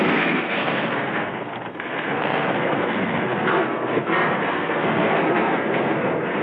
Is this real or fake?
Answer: fake